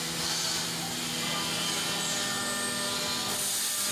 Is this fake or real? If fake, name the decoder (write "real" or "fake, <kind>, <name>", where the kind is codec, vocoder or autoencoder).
real